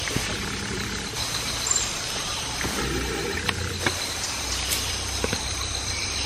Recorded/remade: remade